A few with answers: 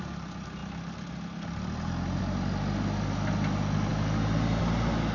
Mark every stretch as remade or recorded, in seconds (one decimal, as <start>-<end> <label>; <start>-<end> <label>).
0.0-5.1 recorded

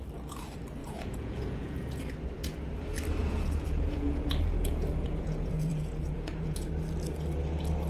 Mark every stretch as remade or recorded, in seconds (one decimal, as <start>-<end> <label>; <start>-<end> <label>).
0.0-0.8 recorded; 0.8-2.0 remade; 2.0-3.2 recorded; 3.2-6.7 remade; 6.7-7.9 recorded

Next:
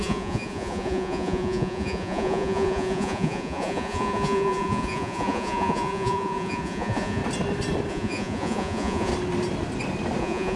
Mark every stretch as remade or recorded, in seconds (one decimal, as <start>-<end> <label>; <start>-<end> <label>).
0.0-7.2 remade; 7.2-7.9 recorded; 7.9-9.1 remade; 9.1-10.2 recorded; 10.2-10.6 remade

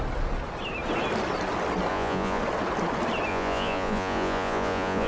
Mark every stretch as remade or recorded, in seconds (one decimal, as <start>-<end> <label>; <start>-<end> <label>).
0.0-1.9 recorded; 1.9-2.4 remade; 2.4-3.3 recorded; 3.3-5.1 remade